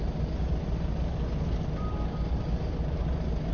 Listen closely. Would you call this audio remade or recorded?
recorded